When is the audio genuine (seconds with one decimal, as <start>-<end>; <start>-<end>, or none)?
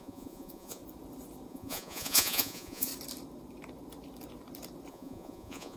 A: 0.8-1.5; 2.9-4.9